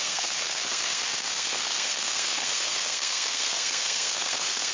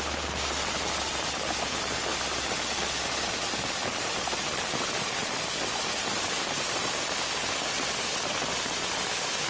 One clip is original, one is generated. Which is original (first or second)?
second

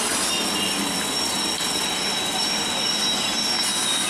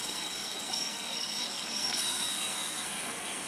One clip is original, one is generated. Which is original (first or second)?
first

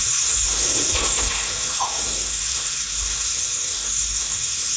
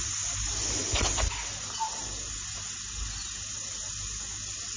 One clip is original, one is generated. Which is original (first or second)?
second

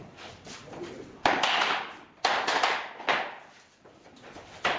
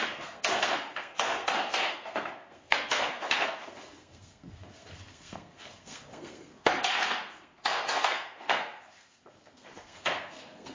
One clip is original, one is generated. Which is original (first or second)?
first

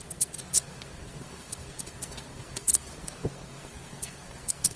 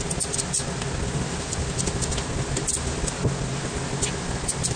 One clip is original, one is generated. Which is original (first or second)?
second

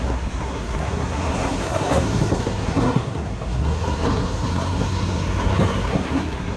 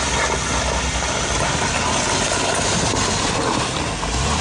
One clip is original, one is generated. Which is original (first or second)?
second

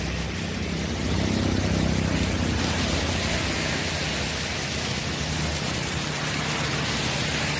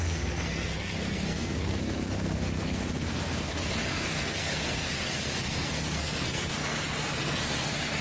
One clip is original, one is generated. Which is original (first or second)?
first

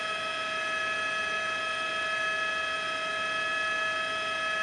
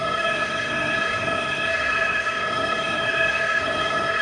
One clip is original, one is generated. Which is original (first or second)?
first